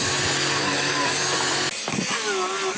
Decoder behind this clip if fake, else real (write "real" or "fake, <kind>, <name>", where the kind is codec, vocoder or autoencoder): real